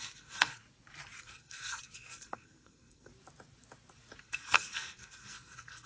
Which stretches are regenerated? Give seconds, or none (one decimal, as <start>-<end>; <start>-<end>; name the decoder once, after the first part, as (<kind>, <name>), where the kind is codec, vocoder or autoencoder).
0.0-0.6 (codec, SNAC); 1.2-3.1; 4.2-5.9